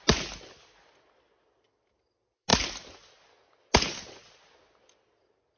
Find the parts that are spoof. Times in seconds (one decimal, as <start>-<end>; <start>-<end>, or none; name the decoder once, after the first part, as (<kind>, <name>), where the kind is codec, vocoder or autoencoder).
none